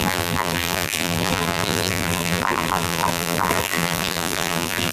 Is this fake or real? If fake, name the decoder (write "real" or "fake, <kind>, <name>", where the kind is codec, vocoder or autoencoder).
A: fake, vocoder, BigVGAN v2